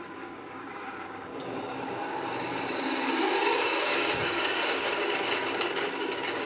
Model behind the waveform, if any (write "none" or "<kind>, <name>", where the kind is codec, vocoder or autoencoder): codec, DAC